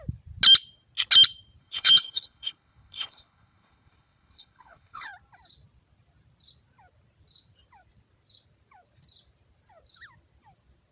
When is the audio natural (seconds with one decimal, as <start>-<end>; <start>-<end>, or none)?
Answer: 0.0-1.6; 5.1-10.9